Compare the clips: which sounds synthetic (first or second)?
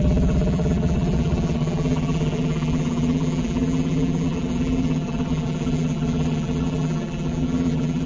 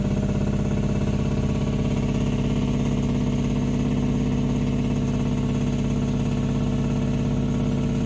first